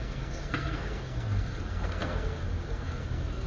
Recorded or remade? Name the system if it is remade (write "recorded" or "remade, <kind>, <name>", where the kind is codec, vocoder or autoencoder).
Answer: remade, codec, SNAC